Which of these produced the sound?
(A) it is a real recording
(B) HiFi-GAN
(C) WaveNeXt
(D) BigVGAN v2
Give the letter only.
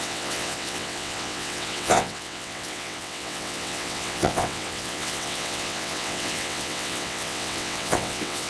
C